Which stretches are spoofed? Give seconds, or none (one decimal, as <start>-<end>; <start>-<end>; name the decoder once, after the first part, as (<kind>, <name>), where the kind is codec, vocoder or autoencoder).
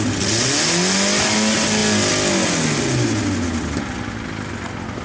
none